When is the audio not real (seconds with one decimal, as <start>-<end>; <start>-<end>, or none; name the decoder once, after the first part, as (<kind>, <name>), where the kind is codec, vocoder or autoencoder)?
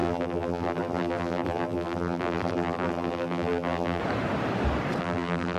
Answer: 0.0-4.0 (vocoder, BigVGAN v2); 5.0-5.6